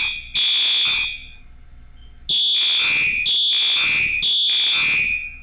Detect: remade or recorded recorded